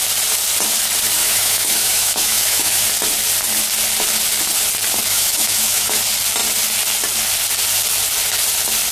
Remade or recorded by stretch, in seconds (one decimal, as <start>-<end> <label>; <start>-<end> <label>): 0.0-1.2 recorded; 1.2-2.9 remade; 2.9-5.1 recorded; 5.1-6.0 remade; 6.0-8.9 recorded